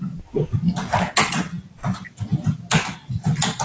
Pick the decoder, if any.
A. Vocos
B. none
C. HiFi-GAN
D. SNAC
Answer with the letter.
B